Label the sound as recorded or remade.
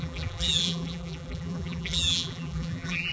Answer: remade